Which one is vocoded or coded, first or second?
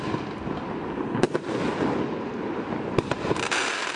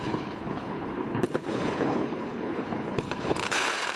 second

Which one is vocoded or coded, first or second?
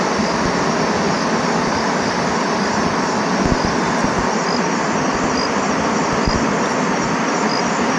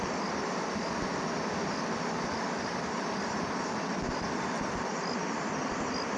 second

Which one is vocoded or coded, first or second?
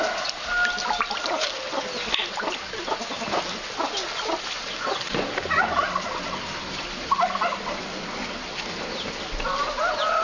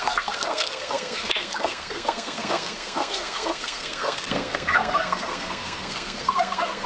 second